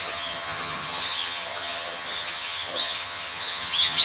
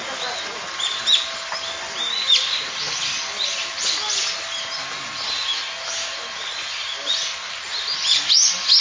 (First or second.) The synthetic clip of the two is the first